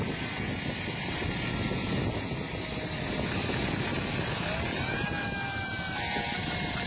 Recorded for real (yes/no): yes